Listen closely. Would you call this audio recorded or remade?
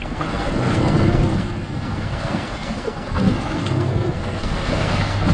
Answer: remade